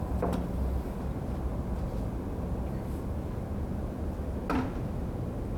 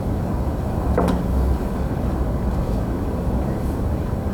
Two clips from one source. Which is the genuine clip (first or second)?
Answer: first